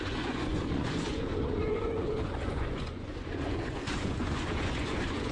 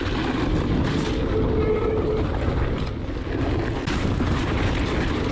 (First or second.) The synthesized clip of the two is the first